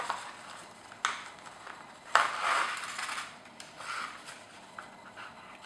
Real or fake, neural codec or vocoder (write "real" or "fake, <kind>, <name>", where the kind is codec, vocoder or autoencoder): real